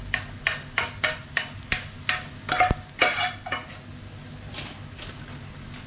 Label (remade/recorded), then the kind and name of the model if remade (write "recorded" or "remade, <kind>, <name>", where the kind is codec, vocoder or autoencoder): recorded